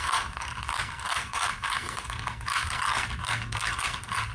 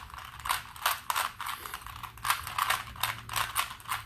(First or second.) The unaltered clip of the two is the second